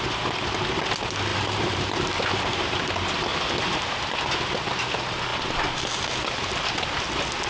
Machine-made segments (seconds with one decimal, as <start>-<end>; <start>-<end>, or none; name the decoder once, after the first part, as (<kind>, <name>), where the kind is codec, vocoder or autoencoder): 1.3-2.9 (vocoder, BigVGAN v2); 3.3-4.0